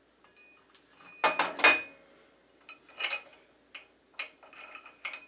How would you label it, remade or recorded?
recorded